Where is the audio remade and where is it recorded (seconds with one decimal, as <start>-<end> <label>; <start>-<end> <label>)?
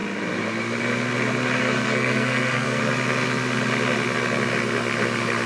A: 0.0-1.6 recorded; 1.6-2.8 remade; 2.8-5.5 recorded